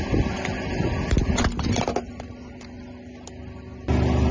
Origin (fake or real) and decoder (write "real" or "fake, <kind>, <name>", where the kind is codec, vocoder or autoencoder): real